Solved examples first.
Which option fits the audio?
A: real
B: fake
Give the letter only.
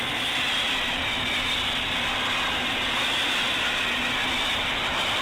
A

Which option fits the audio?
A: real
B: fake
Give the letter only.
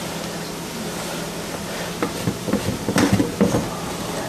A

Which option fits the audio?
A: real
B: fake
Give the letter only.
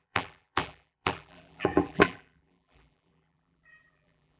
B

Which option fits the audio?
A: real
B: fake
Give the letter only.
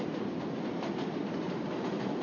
B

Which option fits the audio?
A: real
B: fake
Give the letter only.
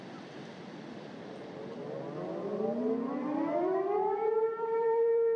B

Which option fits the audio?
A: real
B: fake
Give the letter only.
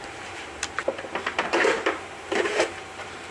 B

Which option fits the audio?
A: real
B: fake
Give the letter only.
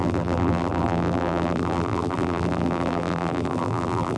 B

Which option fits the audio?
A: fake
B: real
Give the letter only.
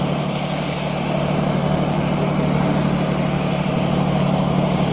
A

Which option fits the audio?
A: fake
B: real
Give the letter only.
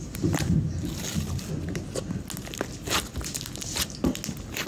B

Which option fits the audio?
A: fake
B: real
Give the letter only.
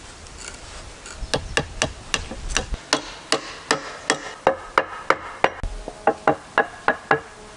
B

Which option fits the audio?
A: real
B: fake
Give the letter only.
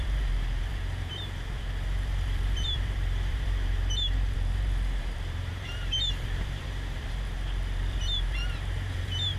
B